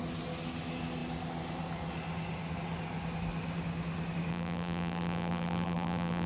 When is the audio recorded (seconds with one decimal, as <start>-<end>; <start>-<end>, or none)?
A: 0.0-4.3